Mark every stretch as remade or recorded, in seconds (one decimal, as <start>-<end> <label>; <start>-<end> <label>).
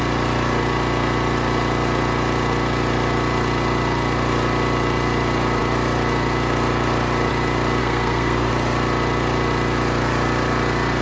0.0-7.8 recorded; 7.8-8.5 remade; 8.5-11.0 recorded